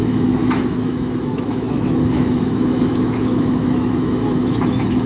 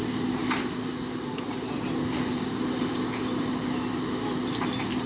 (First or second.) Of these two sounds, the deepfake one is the first